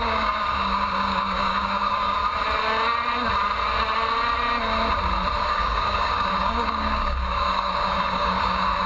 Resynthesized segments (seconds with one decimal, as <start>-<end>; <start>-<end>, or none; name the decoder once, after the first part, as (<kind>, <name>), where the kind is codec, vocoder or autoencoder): 0.0-2.2 (codec, DAC); 5.4-8.9